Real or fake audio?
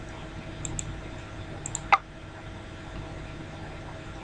real